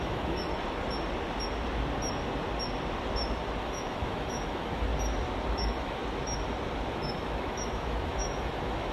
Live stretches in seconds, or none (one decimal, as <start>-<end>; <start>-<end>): 0.5-3.6; 4.9-5.5; 6.0-6.9